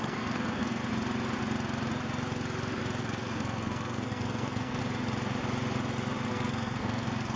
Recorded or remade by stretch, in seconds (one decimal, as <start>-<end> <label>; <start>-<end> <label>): 0.0-0.8 remade; 0.8-3.0 recorded; 3.0-4.8 remade; 4.8-6.3 recorded; 6.3-7.4 remade